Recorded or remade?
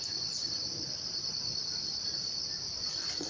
recorded